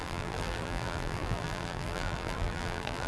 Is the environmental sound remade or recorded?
remade